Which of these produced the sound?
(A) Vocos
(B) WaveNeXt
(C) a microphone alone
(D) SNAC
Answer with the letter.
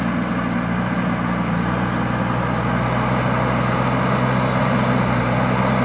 C